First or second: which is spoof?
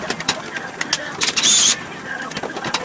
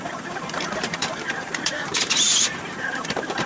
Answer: second